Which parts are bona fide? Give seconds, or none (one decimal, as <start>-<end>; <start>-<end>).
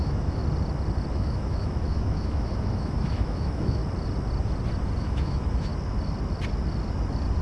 0.4-1.1; 3.8-5.0; 5.7-7.4